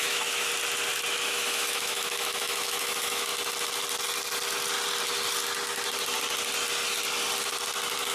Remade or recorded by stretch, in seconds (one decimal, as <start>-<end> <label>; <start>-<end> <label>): 0.0-0.5 remade; 0.5-1.2 recorded; 1.2-3.3 remade; 3.3-8.1 recorded